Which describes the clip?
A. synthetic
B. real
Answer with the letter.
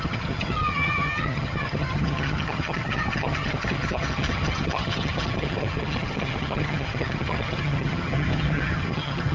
A